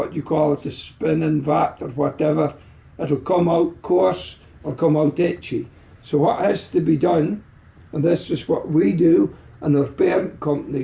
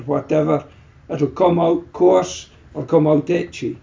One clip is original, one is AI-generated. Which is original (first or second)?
second